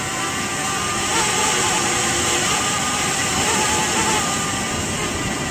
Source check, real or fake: real